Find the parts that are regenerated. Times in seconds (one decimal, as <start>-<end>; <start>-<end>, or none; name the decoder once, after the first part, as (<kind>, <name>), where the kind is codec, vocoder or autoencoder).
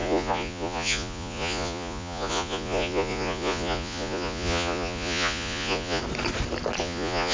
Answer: 0.0-6.0 (vocoder, Vocos); 6.8-7.3